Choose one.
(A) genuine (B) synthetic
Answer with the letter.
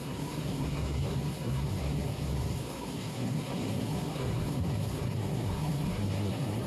B